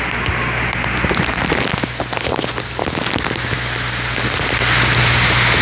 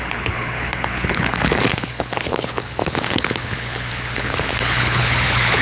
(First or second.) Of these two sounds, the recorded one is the first